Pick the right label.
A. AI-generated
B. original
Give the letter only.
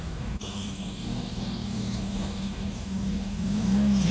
A